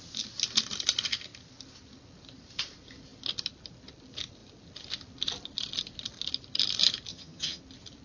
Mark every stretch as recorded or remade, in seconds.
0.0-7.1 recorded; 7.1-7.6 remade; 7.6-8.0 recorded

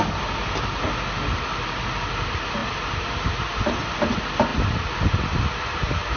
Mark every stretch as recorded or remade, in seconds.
0.0-6.2 recorded

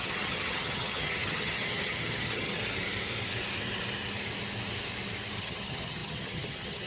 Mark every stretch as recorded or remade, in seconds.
0.0-2.6 remade; 2.6-5.4 recorded; 5.4-6.9 remade